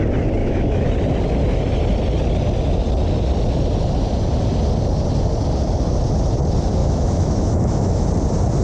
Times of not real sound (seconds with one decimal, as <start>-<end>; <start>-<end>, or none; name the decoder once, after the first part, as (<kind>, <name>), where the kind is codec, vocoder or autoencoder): 0.4-0.9 (autoencoder, DAC-VAE); 6.8-8.1